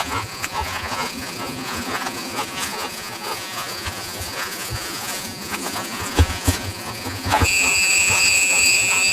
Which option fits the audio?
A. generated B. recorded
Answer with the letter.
A